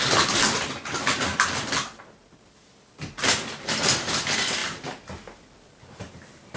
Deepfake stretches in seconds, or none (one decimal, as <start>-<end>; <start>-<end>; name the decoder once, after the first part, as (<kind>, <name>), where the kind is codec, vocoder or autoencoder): none